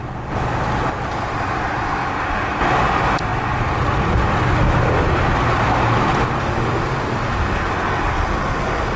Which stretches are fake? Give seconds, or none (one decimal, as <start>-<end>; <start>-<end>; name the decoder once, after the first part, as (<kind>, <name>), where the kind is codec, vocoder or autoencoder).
none